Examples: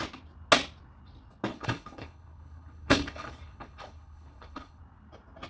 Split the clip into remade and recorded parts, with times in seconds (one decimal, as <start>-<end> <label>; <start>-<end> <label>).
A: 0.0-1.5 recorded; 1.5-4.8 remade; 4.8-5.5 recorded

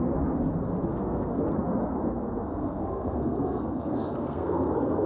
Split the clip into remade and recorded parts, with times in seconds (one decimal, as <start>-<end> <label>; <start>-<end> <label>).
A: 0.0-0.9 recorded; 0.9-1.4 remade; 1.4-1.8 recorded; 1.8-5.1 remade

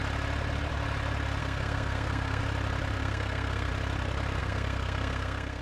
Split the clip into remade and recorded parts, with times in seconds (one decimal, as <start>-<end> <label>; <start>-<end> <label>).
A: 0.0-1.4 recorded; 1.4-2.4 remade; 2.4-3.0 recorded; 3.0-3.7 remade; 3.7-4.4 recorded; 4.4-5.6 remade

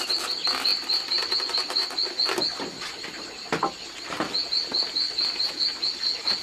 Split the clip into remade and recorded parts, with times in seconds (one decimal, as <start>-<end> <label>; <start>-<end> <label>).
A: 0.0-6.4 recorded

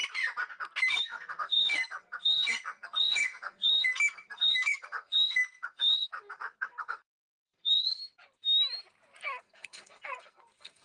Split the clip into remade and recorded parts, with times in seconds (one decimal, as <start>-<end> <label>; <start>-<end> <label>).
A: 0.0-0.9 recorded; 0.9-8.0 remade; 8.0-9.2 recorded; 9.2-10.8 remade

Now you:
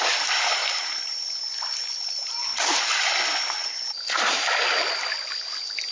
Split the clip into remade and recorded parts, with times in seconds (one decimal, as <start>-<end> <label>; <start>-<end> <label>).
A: 0.0-5.9 recorded

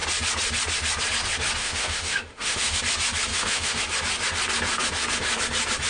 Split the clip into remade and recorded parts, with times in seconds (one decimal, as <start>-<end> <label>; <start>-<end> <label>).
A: 0.0-1.6 recorded; 1.6-2.8 remade; 2.8-3.3 recorded; 3.3-3.8 remade; 3.8-5.9 recorded

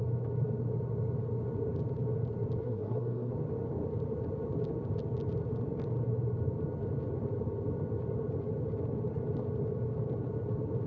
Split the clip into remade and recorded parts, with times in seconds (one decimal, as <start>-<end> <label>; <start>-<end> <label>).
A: 0.0-2.6 recorded; 2.6-3.3 remade; 3.3-10.9 recorded